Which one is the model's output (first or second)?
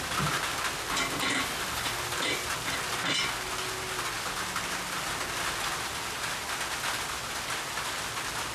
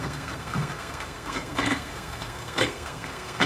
second